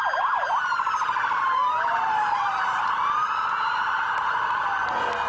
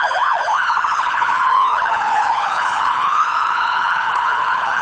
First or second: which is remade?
second